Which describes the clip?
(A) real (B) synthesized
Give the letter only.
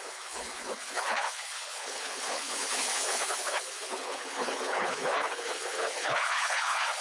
B